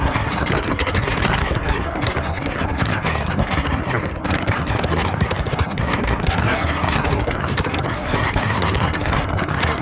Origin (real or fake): fake